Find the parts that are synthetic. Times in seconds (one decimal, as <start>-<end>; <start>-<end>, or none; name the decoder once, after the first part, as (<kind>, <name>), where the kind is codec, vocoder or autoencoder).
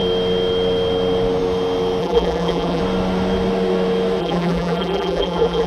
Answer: 2.0-2.8 (vocoder, BigVGAN v2); 4.2-5.7